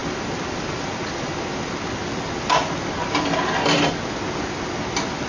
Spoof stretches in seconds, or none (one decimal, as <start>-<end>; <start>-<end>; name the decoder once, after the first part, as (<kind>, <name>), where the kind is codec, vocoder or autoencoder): 0.0-1.3 (vocoder, BigVGAN v2)